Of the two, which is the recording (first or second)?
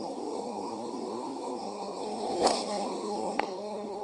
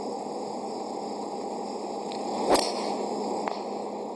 second